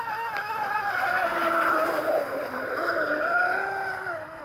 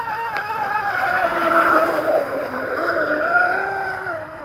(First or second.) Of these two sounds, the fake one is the second